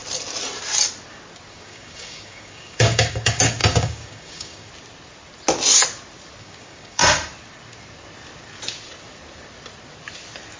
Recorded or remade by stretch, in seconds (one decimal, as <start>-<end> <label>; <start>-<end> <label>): 0.0-1.5 recorded; 1.5-4.7 remade; 4.7-6.4 recorded; 6.4-7.0 remade; 7.0-10.6 recorded